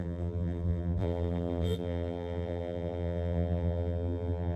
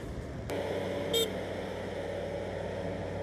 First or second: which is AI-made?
first